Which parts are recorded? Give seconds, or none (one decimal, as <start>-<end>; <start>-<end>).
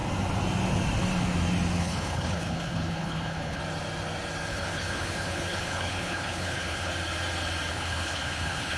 0.0-1.8; 3.6-4.5; 6.9-7.7